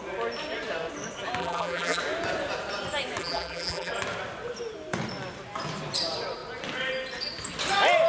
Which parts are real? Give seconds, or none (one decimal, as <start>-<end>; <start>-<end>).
0.0-1.4; 2.0-3.2; 3.9-8.1